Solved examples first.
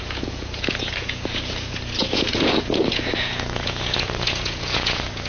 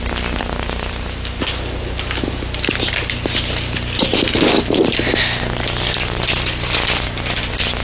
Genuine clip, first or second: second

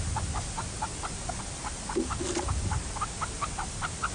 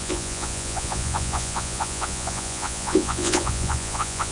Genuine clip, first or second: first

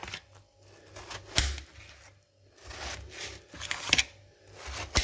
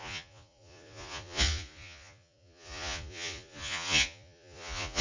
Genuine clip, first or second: first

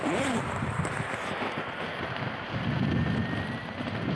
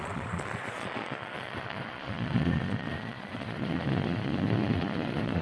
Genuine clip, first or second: first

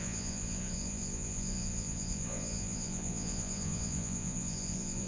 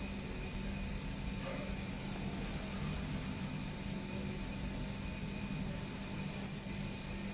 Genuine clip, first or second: second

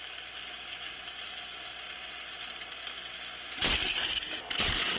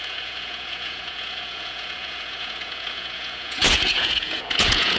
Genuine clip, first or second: first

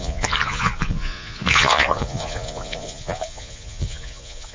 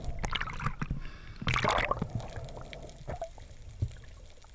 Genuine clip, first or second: second